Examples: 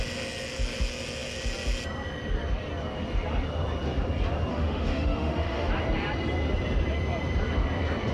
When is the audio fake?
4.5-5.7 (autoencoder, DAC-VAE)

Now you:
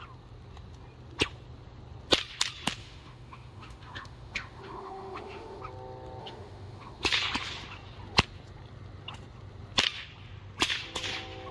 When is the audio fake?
2.8-5.6 (autoencoder, DAC-VAE); 6.2-7.0

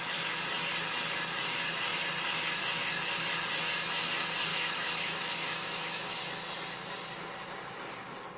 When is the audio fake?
4.5-6.2 (autoencoder, DAC-VAE)

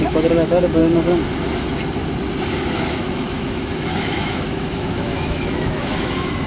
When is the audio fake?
0.0-0.8 (autoencoder, DAC-VAE); 2.7-6.5